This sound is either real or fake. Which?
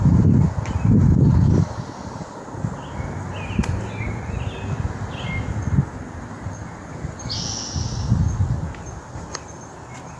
real